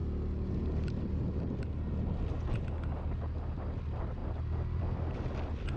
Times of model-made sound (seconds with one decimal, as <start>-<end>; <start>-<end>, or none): none